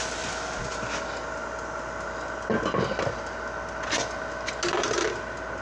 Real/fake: real